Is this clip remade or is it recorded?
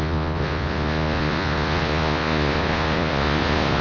remade